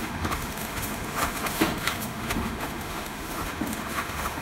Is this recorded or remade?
remade